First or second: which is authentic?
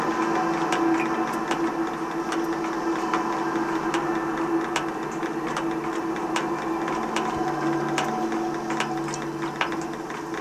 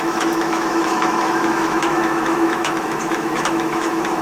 first